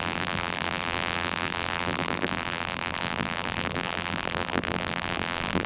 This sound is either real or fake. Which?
fake